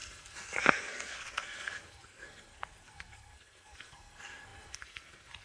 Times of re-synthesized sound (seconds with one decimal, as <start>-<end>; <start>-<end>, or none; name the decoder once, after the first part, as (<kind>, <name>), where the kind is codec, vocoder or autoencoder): 0.0-5.4 (codec, SNAC)